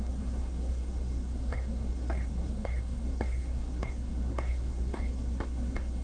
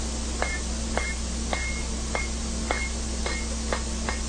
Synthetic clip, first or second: first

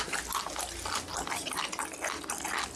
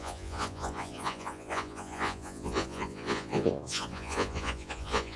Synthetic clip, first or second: second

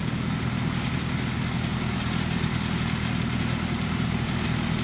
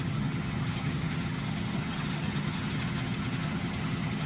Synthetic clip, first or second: second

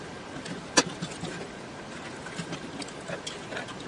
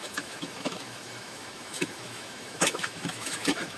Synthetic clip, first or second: second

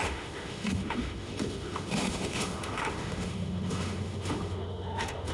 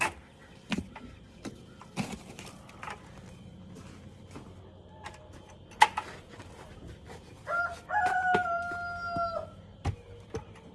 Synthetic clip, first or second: first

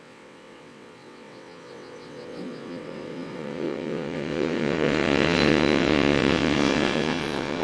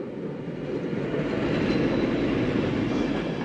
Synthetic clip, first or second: first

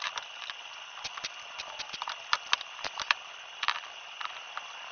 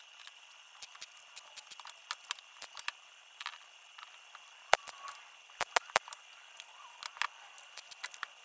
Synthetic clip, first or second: first